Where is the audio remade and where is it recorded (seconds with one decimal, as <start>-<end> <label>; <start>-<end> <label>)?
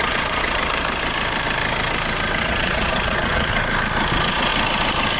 0.0-0.6 remade; 0.6-2.4 recorded; 2.4-3.5 remade; 3.5-4.1 recorded; 4.1-4.5 remade; 4.5-5.2 recorded